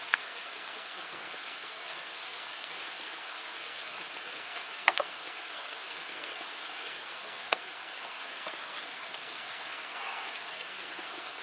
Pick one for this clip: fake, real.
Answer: fake